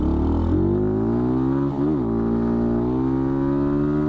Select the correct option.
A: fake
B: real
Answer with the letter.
B